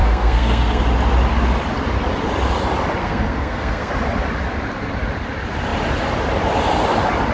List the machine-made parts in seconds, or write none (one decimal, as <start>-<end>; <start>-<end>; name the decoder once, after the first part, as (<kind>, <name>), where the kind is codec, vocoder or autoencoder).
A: 0.0-0.8 (codec, SNAC); 3.0-3.9